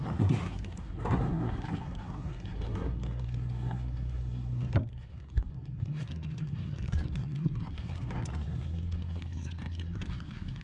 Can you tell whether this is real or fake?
fake